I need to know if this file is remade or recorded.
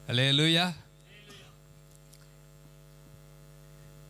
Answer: recorded